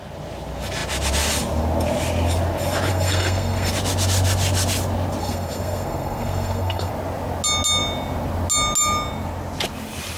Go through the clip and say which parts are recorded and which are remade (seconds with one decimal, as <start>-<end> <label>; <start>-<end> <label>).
0.0-2.9 recorded; 2.9-3.7 remade; 3.7-5.2 recorded; 5.2-6.9 remade; 6.9-10.2 recorded